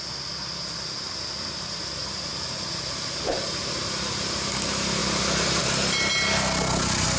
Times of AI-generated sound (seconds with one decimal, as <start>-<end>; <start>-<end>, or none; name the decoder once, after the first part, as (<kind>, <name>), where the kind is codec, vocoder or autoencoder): none